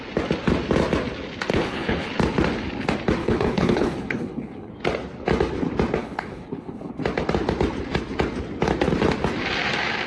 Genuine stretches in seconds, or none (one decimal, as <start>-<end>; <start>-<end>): 0.0-1.5; 2.1-3.2; 4.7-6.0; 6.9-10.1